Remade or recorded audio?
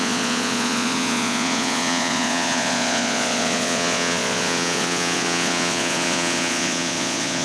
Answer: remade